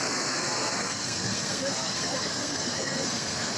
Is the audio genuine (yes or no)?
no